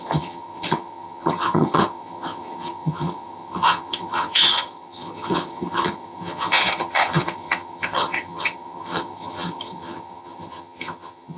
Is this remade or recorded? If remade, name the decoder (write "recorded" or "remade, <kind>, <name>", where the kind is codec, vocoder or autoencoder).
remade, vocoder, HiFi-GAN